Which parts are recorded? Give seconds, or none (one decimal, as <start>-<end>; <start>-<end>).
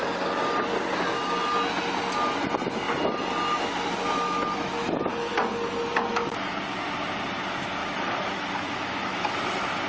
0.0-4.0; 4.7-7.8; 9.4-9.9